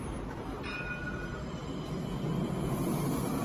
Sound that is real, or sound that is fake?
real